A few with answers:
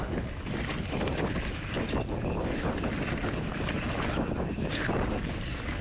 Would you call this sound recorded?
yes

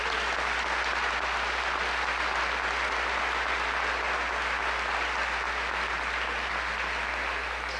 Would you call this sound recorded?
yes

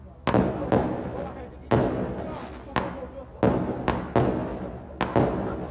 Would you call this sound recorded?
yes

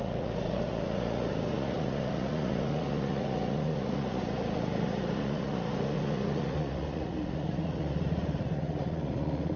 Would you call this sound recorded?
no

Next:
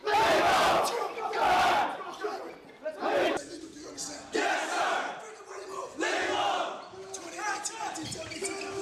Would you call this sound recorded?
yes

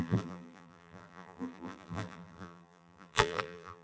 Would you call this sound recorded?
no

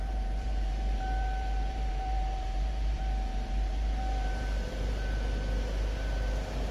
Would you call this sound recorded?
no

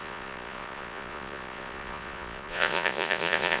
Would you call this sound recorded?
no